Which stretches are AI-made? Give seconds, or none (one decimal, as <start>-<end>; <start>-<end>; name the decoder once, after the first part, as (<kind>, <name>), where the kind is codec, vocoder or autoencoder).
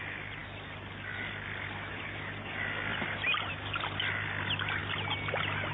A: none